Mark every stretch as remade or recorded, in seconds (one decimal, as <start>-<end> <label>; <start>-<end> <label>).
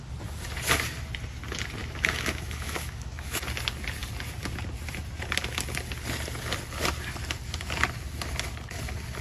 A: 0.0-1.8 recorded; 1.8-3.4 remade; 3.4-9.2 recorded